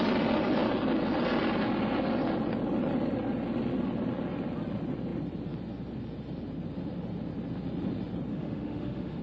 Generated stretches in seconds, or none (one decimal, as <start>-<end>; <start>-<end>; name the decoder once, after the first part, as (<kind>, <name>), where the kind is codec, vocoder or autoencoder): 8.3-9.2 (autoencoder, DAC-VAE)